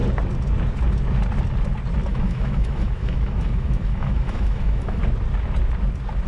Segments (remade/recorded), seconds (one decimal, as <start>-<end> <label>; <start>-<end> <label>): 0.0-2.1 recorded; 2.1-5.0 remade; 5.0-6.3 recorded